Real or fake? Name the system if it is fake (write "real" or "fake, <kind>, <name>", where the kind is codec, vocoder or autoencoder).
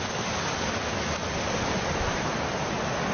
real